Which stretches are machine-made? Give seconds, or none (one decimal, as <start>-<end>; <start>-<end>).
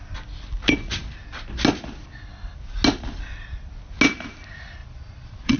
4.8-5.6